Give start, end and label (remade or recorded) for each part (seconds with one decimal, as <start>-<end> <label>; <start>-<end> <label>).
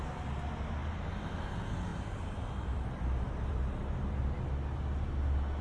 0.0-1.9 recorded; 1.9-4.5 remade; 4.5-5.6 recorded